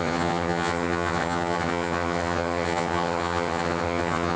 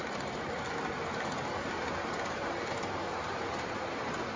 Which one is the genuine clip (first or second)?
second